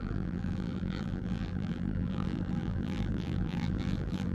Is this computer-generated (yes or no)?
yes